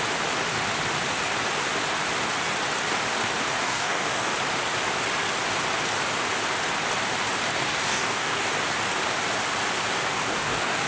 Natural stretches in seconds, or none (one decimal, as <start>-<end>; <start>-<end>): 0.0-3.6; 4.3-7.6; 8.5-10.1